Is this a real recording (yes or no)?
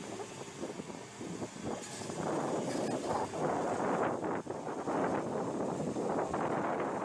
yes